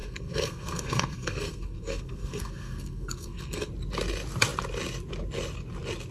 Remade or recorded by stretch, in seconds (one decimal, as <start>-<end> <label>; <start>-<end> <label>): 0.0-3.7 remade; 3.7-6.1 recorded